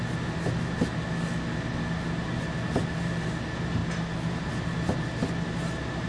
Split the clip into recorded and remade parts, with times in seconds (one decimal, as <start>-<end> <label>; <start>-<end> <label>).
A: 0.0-6.1 recorded